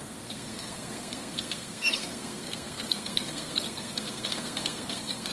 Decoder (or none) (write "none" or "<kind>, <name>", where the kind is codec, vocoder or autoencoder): codec, SNAC